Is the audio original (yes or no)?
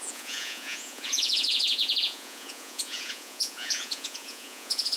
no